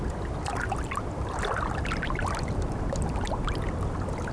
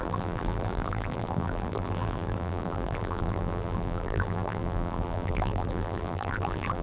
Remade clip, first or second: second